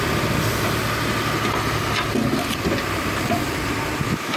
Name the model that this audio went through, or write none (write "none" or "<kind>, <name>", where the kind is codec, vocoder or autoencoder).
none